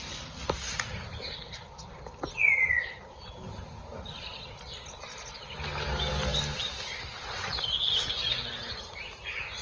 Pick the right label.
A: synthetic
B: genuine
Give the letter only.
B